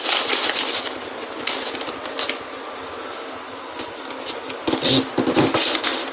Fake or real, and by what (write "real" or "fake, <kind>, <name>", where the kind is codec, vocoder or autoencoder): real